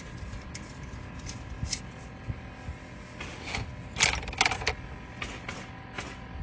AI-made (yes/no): no